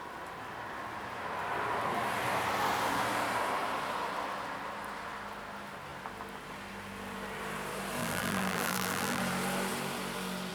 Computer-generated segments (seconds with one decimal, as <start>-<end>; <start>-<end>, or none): 8.0-9.2